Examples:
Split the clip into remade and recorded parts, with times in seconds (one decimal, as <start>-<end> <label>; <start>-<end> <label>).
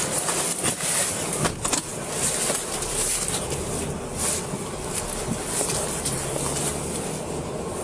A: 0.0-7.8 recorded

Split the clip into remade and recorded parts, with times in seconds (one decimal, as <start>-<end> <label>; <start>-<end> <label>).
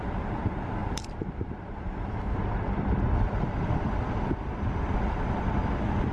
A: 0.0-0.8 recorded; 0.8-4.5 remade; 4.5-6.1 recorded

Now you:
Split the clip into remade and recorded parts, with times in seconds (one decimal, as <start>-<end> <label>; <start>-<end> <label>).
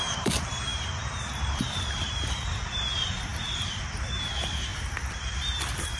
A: 0.0-4.7 remade; 4.7-5.6 recorded; 5.6-6.0 remade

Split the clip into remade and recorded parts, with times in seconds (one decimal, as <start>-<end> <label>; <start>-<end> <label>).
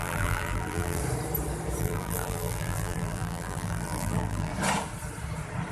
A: 0.0-1.0 remade; 1.0-1.8 recorded; 1.8-4.5 remade; 4.5-5.7 recorded